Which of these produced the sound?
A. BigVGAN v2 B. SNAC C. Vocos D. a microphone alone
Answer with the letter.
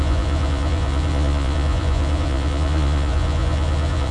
C